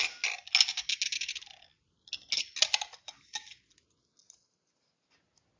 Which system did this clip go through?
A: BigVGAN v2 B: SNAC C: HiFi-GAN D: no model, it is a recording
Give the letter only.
D